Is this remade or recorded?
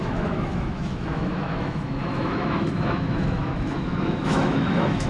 remade